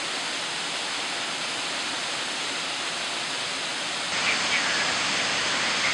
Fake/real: real